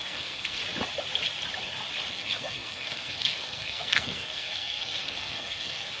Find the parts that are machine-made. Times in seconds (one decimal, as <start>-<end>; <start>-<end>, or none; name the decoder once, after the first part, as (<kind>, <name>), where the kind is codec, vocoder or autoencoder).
0.0-0.6 (codec, SNAC); 2.1-6.0